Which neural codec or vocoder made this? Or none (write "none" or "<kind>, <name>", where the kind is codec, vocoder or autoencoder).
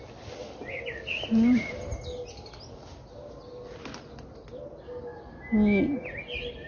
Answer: none